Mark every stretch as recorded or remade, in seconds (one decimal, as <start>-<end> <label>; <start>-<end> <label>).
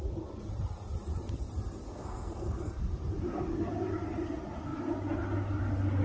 0.0-1.9 recorded; 1.9-2.9 remade; 2.9-6.0 recorded